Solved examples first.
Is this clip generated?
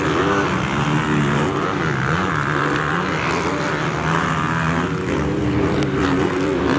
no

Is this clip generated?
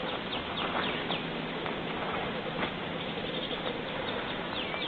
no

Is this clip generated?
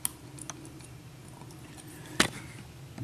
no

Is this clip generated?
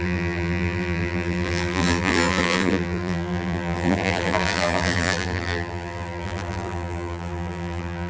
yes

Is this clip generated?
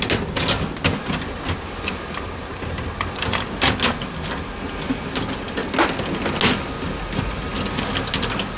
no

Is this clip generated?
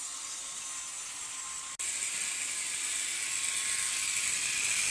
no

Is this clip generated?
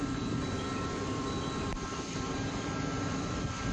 yes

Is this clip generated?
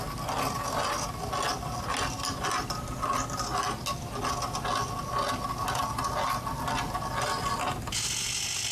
no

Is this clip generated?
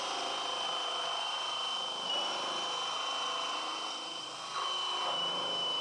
no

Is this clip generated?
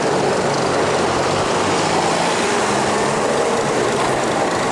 yes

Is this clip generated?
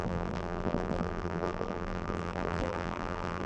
yes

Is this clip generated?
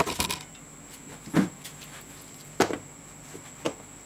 no